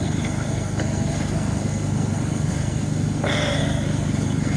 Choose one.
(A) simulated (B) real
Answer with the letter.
A